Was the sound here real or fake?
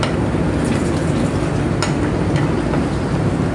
real